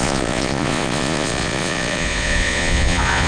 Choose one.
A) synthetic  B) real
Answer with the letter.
A